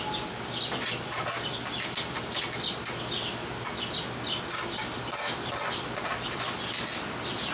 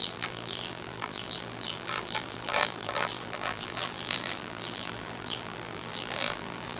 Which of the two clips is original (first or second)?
first